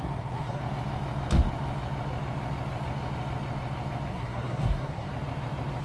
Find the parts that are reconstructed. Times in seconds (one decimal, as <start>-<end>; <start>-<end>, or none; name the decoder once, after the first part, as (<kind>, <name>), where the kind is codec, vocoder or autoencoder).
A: 0.0-0.6 (codec, SNAC); 4.1-5.1